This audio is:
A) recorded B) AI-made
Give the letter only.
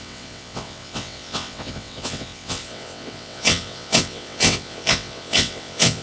B